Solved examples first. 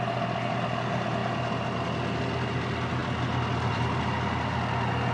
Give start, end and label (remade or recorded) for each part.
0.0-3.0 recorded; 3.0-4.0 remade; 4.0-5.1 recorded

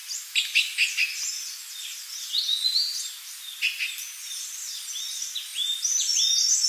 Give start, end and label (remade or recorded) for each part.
0.0-6.7 recorded

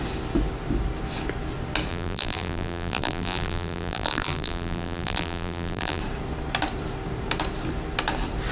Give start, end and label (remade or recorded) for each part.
0.0-1.9 recorded; 1.9-6.0 remade; 6.0-8.5 recorded

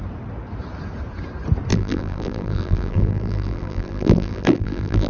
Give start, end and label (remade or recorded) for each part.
0.0-1.7 recorded; 1.7-5.1 remade

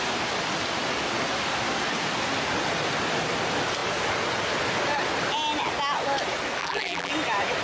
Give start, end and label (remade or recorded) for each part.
0.0-6.6 recorded; 6.6-7.1 remade; 7.1-7.6 recorded

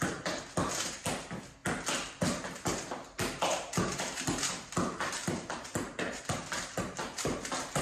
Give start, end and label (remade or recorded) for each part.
0.0-5.2 recorded; 5.2-6.2 remade; 6.2-7.8 recorded

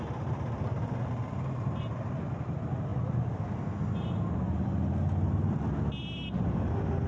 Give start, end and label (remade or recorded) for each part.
0.0-7.1 recorded

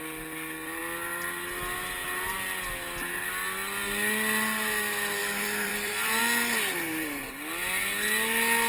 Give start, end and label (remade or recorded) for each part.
0.0-5.2 recorded; 5.2-6.2 remade; 6.2-8.7 recorded